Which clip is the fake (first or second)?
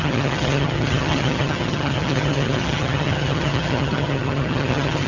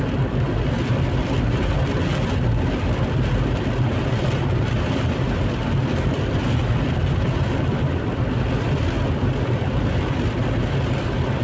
first